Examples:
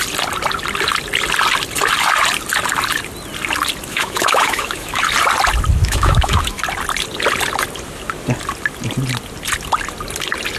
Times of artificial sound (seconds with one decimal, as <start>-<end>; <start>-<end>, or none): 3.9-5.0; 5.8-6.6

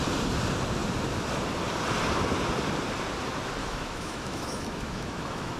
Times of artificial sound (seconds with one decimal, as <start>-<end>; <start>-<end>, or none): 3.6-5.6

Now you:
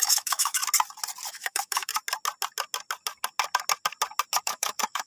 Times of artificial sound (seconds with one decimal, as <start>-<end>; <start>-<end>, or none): 0.0-0.6; 1.3-1.9; 4.4-5.1